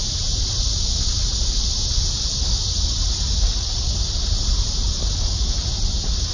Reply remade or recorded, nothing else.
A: recorded